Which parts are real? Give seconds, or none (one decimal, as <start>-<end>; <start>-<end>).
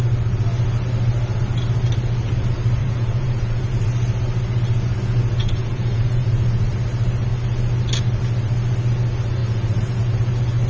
0.0-2.8; 3.7-5.4; 6.7-9.4; 10.0-10.7